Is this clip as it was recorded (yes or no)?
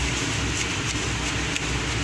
yes